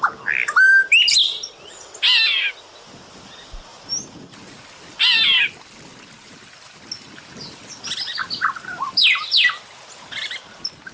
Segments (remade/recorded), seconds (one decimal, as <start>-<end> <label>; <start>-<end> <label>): 0.0-10.9 recorded